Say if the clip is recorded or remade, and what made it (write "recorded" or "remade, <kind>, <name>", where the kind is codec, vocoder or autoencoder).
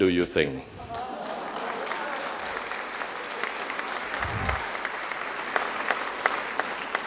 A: recorded